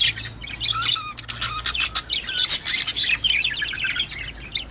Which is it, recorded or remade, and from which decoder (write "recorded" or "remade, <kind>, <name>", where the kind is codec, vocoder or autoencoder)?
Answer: recorded